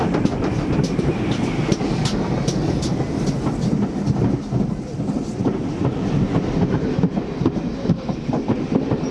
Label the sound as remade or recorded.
recorded